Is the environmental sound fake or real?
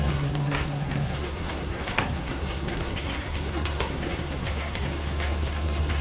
fake